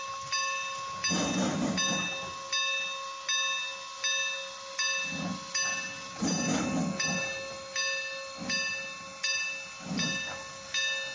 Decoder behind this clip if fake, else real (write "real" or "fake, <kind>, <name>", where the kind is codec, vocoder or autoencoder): real